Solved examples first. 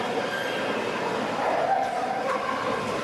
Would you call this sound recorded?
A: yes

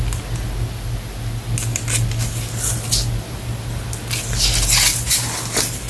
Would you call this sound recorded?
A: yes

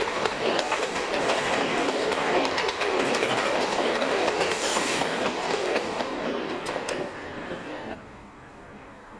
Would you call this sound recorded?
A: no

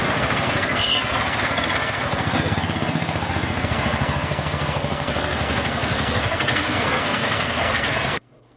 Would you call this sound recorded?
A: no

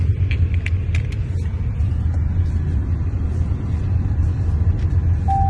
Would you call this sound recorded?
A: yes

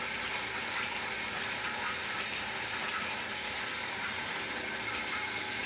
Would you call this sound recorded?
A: yes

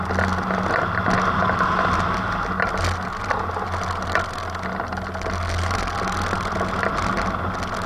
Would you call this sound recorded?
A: yes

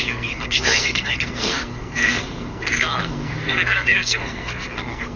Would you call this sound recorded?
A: no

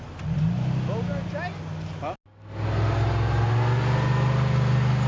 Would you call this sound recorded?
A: yes